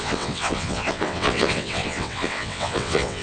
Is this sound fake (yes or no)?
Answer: yes